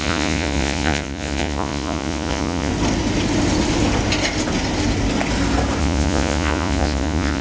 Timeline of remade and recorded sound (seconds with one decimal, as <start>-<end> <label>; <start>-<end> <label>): 0.0-2.7 remade; 2.7-5.8 recorded; 5.8-7.4 remade